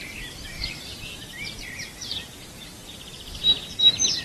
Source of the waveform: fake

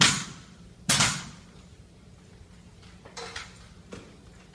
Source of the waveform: real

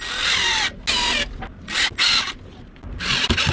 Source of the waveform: real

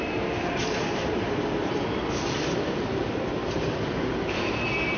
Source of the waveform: fake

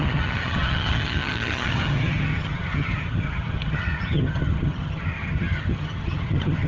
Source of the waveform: fake